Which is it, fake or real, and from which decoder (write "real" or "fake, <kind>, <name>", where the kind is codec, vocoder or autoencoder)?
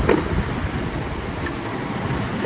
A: real